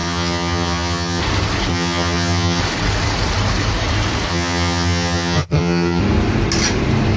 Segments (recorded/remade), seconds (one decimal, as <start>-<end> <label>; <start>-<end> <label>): 0.0-1.2 remade; 1.2-1.7 recorded; 1.7-2.6 remade; 2.6-4.3 recorded; 4.3-6.0 remade; 6.0-7.2 recorded